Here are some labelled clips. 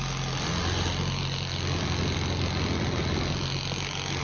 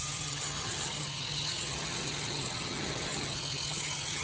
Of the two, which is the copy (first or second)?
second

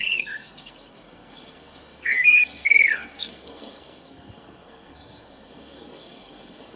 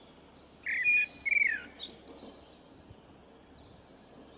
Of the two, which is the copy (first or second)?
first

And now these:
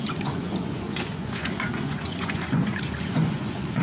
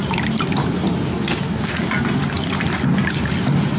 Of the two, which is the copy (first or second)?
first